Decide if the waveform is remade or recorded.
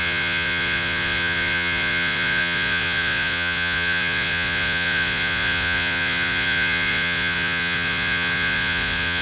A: remade